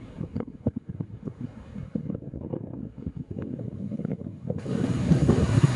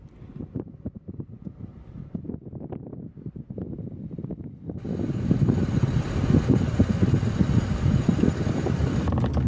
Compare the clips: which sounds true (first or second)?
second